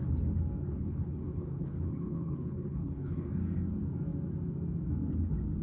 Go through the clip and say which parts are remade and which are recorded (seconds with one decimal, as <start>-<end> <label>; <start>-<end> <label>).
0.0-0.6 recorded; 0.6-3.4 remade; 3.4-5.6 recorded